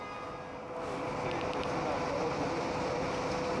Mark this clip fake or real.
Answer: real